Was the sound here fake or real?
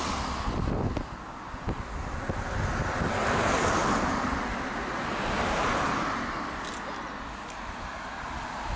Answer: real